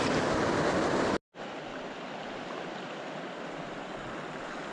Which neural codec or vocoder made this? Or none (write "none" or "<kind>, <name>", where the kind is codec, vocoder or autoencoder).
none